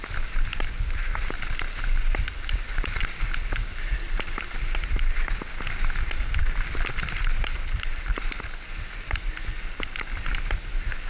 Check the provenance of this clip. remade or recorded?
recorded